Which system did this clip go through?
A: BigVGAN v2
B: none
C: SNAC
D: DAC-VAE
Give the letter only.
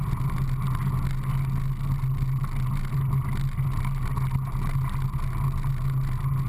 B